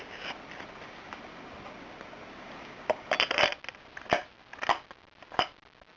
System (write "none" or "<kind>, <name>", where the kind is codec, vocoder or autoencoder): none